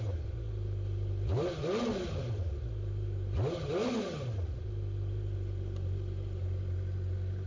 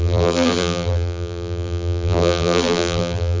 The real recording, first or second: first